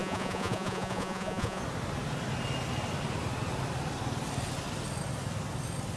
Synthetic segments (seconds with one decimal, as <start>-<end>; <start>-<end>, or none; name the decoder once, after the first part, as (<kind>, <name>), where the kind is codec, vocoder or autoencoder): 0.0-1.6 (vocoder, Vocos)